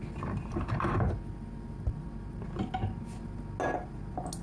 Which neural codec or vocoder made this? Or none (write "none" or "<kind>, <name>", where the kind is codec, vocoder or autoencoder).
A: none